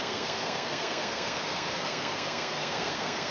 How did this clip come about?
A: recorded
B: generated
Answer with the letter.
B